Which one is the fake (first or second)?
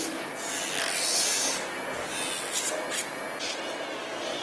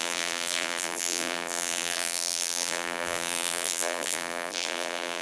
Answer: second